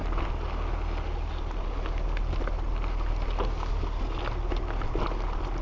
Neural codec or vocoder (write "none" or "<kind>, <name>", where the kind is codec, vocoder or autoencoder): none